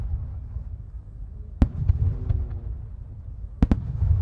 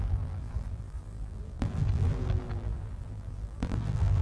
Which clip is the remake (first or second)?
second